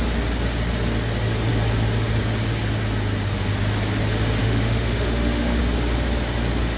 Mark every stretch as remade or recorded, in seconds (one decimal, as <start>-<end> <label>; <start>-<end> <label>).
0.0-4.4 recorded; 4.4-5.6 remade; 5.6-6.8 recorded